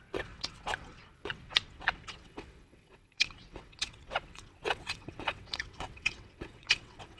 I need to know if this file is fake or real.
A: fake